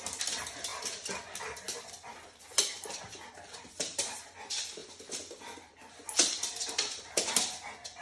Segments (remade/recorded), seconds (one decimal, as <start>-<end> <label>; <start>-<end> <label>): 0.0-8.0 recorded